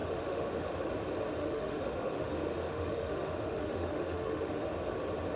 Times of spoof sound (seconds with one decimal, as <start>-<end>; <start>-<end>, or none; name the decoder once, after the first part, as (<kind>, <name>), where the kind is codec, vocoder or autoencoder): 0.0-0.9 (autoencoder, DAC-VAE); 1.4-4.6